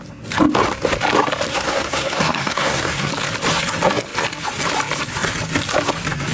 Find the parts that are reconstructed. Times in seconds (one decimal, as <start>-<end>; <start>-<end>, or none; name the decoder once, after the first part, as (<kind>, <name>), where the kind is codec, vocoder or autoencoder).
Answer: 1.5-3.1 (codec, SNAC)